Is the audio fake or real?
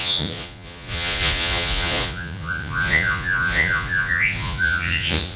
fake